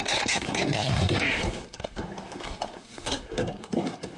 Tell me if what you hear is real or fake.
fake